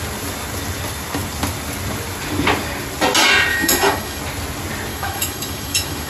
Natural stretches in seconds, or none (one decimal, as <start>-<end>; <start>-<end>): 0.0-3.5; 4.2-4.9